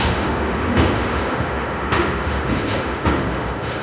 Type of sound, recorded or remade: remade